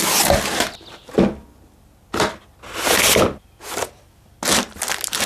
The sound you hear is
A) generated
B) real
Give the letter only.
B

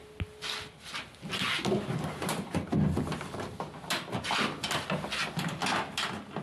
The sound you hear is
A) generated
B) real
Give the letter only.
B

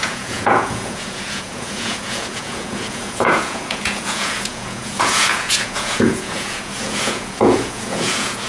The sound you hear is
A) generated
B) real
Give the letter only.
A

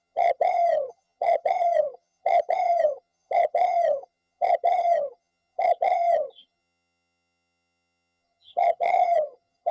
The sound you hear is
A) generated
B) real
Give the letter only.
A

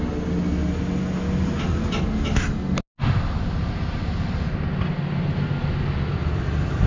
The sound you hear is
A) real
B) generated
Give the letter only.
A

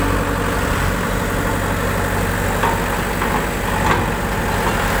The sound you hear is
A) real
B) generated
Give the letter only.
A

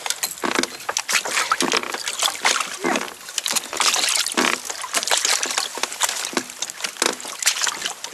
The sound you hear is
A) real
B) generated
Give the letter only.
A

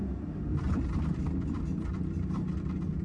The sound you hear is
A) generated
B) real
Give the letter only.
B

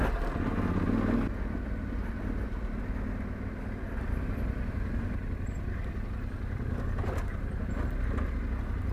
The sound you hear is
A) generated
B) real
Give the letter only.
B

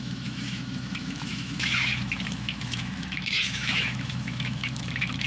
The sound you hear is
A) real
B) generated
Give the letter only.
B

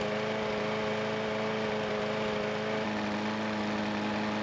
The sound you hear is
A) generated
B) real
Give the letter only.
B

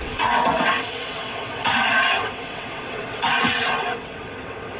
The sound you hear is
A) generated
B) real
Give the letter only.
A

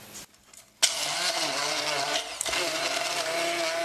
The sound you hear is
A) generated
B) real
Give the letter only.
B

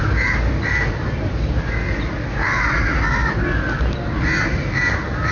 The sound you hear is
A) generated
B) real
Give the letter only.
B